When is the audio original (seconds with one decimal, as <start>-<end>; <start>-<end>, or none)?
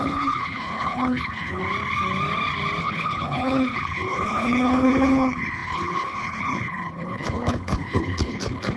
1.6-2.8